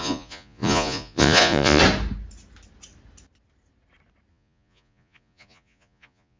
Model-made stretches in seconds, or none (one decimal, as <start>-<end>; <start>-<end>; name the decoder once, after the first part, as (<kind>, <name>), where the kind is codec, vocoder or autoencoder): 0.0-1.8 (vocoder, Vocos); 4.3-6.4